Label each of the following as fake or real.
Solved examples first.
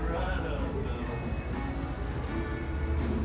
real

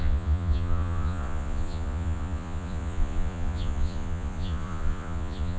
fake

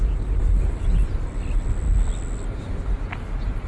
real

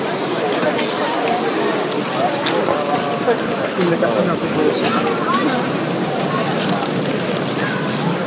real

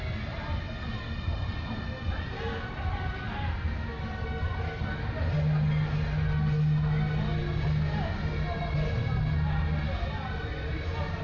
real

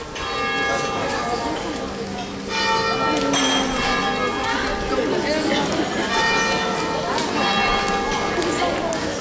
real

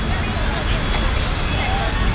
real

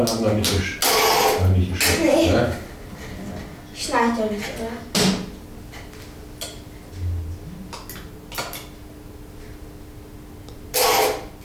real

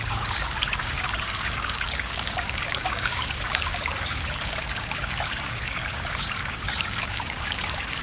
fake